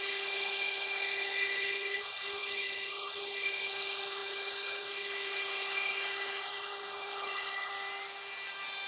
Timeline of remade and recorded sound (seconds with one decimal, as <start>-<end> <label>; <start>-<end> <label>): 0.0-7.7 remade; 7.7-8.9 recorded